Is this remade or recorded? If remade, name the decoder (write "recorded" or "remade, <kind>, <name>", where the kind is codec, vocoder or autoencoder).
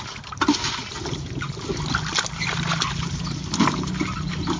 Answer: recorded